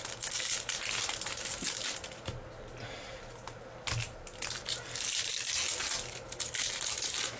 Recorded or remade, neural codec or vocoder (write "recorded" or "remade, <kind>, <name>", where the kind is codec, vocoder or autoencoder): recorded